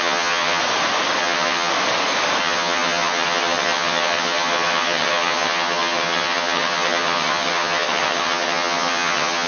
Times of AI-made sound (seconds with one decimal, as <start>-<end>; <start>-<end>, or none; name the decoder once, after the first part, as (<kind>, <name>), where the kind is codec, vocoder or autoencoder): 0.0-0.6 (vocoder, HiFi-GAN); 1.2-1.7; 2.4-9.5